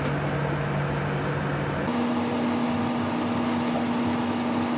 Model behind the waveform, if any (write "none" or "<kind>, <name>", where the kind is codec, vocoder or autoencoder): none